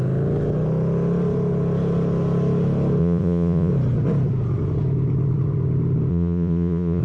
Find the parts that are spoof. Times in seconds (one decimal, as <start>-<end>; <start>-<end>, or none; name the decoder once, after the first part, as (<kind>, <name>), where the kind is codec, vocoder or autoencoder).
3.0-3.7 (vocoder, Vocos); 6.1-7.0